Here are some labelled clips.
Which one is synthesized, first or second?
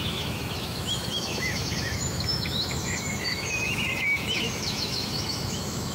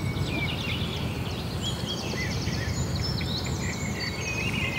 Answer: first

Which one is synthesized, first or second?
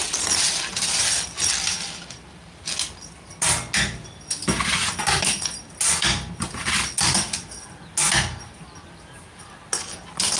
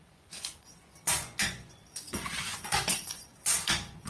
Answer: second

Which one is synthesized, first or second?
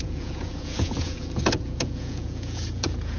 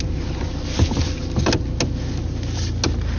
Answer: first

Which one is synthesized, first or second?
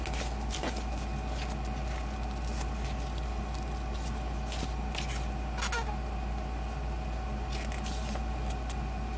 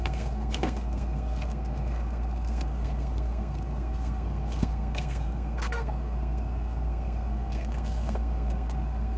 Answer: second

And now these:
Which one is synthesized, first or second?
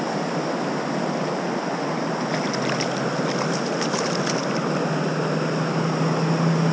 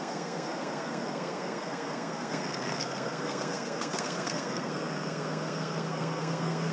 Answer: second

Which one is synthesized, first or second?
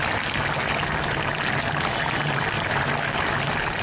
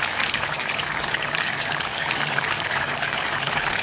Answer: second